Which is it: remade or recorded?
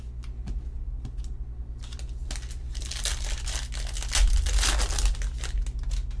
recorded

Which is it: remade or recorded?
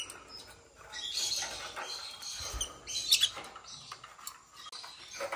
recorded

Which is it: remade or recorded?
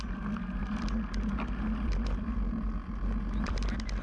recorded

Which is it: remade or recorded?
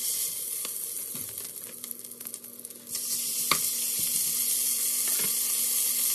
recorded